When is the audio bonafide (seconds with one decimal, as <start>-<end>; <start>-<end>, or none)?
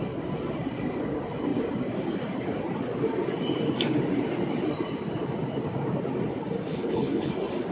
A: 0.0-6.7; 7.3-7.7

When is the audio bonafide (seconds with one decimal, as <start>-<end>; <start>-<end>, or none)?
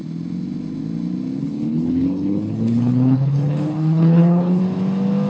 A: 0.0-1.4; 4.6-5.3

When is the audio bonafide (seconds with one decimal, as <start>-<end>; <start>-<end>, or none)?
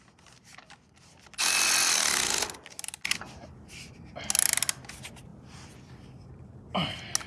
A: 0.0-7.3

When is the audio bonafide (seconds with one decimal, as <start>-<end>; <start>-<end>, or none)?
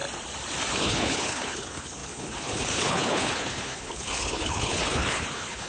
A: 0.0-0.7